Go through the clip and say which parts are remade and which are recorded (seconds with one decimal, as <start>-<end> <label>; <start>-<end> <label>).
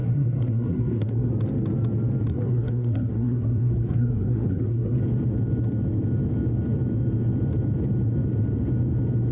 0.0-1.3 remade; 1.3-2.3 recorded; 2.3-5.0 remade; 5.0-9.3 recorded